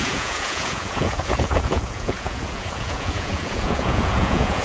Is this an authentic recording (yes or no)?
no